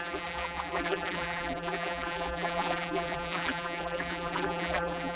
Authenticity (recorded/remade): remade